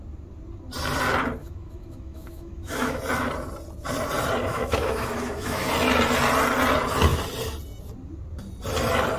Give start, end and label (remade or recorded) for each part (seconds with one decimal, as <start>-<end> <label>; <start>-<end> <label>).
0.0-1.4 recorded; 1.4-3.0 remade; 3.0-4.5 recorded; 4.5-5.7 remade; 5.7-9.2 recorded